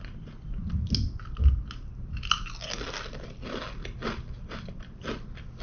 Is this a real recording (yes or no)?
yes